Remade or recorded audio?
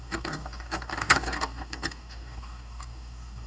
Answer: remade